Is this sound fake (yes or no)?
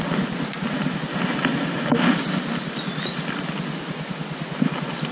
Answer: no